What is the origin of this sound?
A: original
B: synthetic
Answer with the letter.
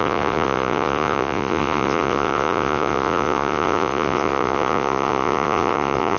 B